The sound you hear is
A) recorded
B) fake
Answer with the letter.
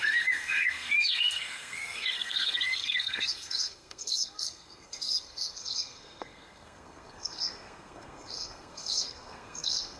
B